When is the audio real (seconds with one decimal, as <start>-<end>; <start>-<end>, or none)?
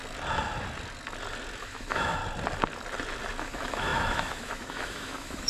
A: 0.0-1.6; 2.2-3.4